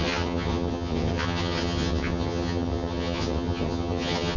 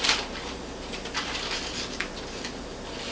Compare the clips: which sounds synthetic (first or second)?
first